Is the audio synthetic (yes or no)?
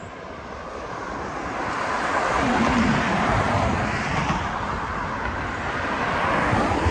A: yes